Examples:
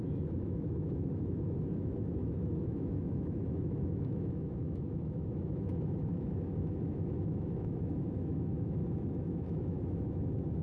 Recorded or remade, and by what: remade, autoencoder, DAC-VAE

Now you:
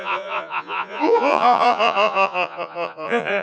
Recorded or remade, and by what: remade, vocoder, Vocos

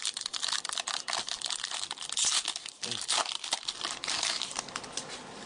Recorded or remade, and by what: recorded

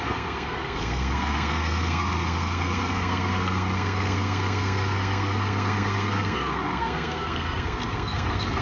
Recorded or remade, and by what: remade, codec, SNAC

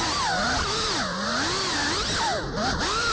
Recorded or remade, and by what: recorded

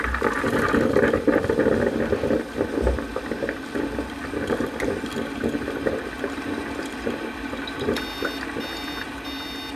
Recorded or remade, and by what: recorded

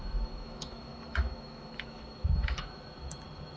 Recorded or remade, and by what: remade, autoencoder, DAC-VAE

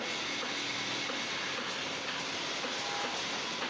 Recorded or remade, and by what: recorded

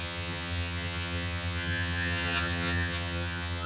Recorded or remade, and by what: remade, vocoder, HiFi-GAN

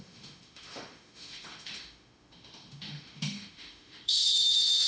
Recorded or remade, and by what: remade, autoencoder, DAC-VAE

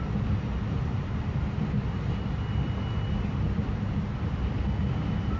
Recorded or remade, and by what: recorded